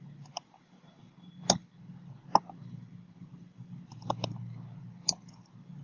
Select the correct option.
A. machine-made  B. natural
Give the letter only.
B